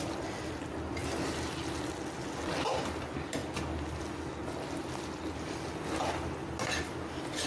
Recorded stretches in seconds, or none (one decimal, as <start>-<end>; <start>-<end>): 0.0-7.5